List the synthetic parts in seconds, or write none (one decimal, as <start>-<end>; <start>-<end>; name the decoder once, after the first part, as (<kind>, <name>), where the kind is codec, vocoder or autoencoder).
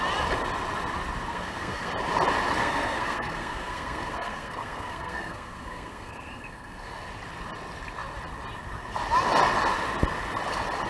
1.3-1.9 (codec, SNAC); 2.6-6.9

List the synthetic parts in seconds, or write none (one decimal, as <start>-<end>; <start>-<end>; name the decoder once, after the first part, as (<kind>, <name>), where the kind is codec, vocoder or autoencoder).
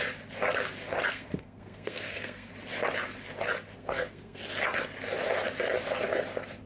1.1-2.5 (codec, SNAC); 3.8-4.4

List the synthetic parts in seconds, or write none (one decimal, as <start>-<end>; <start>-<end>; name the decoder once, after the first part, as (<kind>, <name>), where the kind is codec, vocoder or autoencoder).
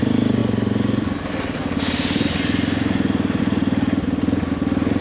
none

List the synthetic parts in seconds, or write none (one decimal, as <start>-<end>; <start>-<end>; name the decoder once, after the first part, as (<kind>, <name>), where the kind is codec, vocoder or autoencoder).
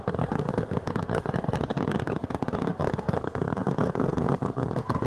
0.0-5.1 (codec, SNAC)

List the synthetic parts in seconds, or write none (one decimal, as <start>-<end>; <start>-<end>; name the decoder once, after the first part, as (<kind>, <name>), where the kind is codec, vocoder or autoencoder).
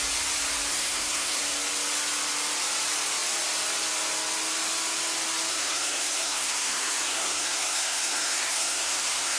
0.7-1.4 (codec, SNAC); 5.5-9.4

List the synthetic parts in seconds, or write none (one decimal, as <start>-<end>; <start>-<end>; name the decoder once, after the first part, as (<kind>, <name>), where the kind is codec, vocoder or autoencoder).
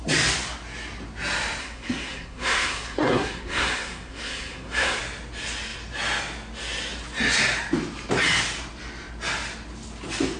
1.6-5.0 (codec, SNAC)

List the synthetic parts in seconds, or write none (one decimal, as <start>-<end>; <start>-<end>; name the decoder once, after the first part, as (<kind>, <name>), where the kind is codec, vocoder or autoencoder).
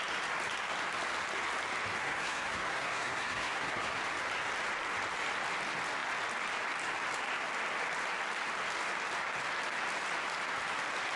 2.0-4.0 (codec, SNAC)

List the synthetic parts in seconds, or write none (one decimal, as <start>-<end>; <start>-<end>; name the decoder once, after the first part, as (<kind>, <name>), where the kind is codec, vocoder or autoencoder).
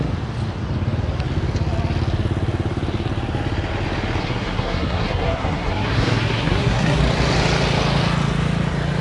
4.2-7.0 (codec, SNAC)